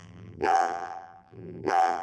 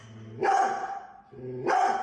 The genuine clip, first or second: second